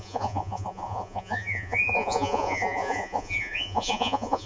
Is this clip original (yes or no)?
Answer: no